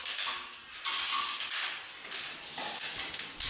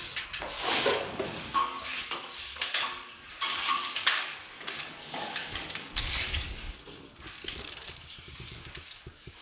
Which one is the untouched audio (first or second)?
first